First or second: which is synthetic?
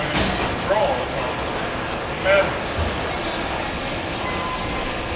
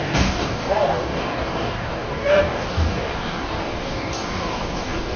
second